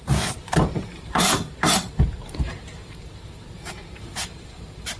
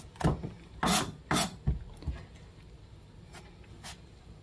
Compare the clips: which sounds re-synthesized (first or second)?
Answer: first